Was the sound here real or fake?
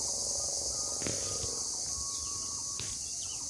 real